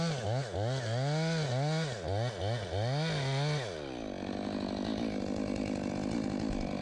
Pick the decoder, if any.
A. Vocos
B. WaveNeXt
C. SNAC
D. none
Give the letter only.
D